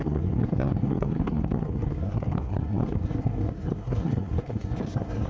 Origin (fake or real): fake